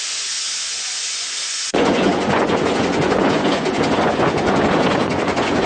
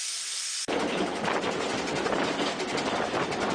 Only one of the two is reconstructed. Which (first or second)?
first